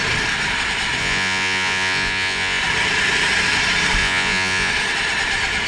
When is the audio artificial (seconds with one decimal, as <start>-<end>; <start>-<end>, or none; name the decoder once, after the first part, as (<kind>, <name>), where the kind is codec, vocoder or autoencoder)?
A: 1.0-2.6 (vocoder, Vocos); 4.0-4.7